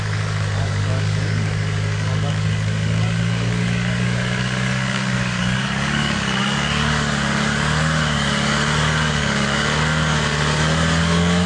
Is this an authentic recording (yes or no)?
no